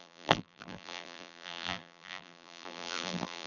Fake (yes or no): yes